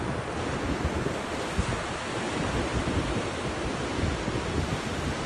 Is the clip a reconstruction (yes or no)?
no